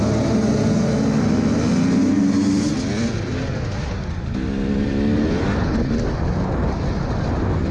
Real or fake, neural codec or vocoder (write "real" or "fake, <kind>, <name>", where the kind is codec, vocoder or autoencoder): real